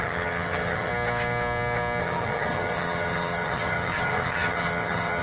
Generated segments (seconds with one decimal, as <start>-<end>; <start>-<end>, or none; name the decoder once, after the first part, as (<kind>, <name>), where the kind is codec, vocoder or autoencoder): 0.0-0.9 (vocoder, HiFi-GAN); 2.0-5.2